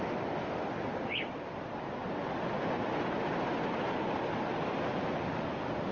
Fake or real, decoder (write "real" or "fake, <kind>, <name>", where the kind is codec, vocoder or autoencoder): real